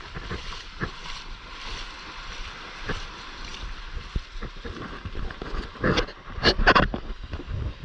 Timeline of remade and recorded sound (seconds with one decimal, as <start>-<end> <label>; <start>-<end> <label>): 0.0-1.0 remade; 1.0-1.6 recorded; 1.6-7.8 remade